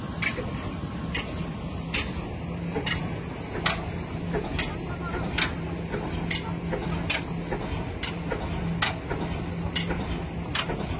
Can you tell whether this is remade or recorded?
recorded